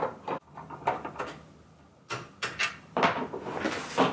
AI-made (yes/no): no